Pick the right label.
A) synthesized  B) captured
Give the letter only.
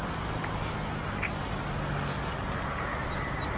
B